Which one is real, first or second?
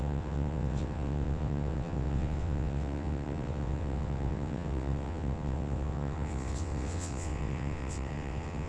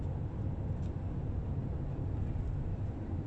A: second